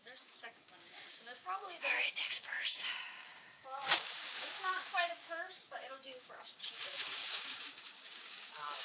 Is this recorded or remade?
remade